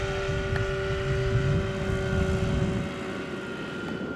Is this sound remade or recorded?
recorded